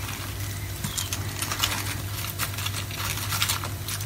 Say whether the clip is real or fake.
real